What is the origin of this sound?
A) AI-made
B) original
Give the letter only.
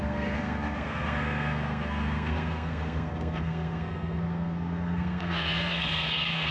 A